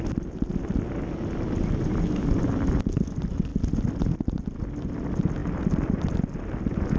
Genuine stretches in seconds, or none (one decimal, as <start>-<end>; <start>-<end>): 0.0-7.0